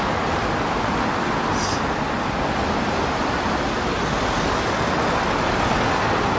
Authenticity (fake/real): real